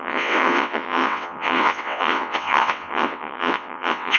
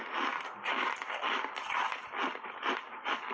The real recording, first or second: second